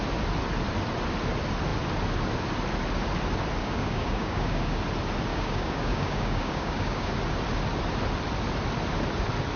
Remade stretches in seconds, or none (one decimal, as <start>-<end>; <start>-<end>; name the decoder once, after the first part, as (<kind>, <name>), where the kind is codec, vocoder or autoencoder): 3.6-4.8 (codec, DAC); 5.3-7.1